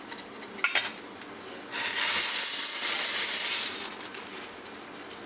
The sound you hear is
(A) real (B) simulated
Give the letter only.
A